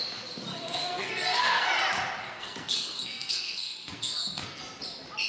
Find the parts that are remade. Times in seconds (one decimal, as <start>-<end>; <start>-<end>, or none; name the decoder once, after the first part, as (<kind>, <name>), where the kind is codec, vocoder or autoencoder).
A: 0.5-1.7 (codec, SNAC); 2.2-4.6